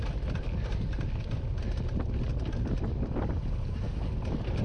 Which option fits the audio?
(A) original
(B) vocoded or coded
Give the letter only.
A